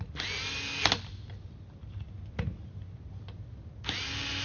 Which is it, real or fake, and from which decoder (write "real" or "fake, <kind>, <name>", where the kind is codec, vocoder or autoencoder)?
real